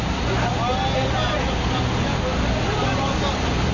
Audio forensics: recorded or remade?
recorded